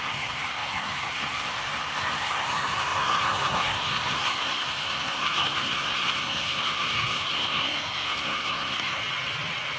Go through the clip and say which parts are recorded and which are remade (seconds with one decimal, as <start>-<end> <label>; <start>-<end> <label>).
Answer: 0.0-9.0 remade; 9.0-9.8 recorded

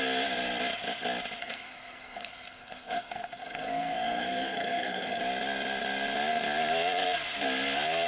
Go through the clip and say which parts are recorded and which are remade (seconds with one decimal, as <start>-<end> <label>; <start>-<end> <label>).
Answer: 0.0-1.4 recorded; 1.4-5.2 remade; 5.2-8.1 recorded

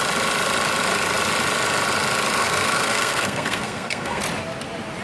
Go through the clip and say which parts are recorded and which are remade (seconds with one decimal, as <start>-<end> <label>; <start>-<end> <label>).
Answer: 0.0-2.4 recorded; 2.4-4.2 remade; 4.2-5.0 recorded

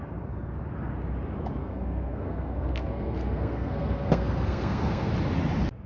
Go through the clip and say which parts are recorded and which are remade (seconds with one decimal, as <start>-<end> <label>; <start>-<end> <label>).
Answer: 0.0-1.6 recorded; 1.6-5.1 remade; 5.1-5.9 recorded

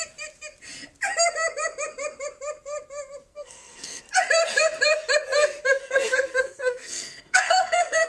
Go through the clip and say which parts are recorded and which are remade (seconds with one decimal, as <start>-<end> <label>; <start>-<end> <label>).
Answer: 0.0-3.3 recorded; 3.3-4.0 remade; 4.0-5.8 recorded; 5.8-8.1 remade